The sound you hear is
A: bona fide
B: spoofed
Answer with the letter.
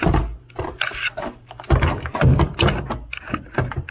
A